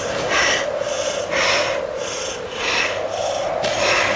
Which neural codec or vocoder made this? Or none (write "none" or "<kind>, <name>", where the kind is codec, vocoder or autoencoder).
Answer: none